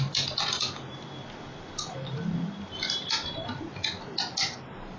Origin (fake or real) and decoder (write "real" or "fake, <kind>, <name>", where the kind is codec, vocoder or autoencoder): real